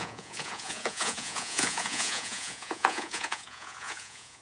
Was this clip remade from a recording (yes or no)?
yes